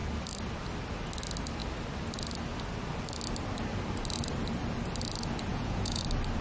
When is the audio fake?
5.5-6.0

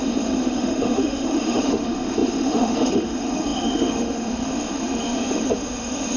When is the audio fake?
0.0-6.2

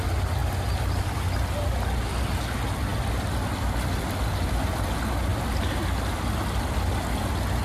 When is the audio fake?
none

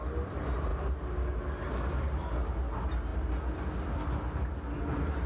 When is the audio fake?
none

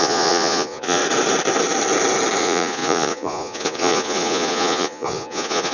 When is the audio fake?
0.0-1.0; 2.4-5.7

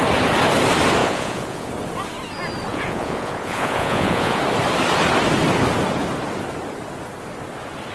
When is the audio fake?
1.0-1.7; 2.7-4.4

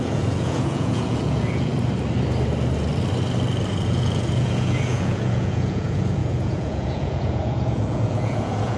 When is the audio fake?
0.0-1.7; 3.7-8.8

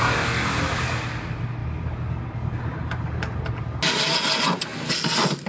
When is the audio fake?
none